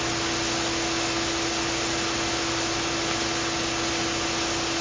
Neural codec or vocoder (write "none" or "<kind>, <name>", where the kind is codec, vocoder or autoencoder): none